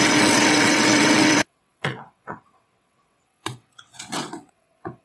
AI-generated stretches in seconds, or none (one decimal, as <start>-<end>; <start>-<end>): 0.0-5.0